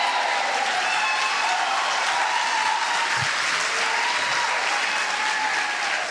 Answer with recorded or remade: recorded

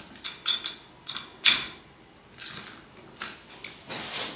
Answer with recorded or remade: recorded